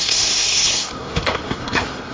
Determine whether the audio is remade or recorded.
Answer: remade